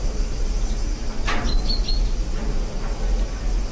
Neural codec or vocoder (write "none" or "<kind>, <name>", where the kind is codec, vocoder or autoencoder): none